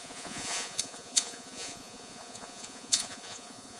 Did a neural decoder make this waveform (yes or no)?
yes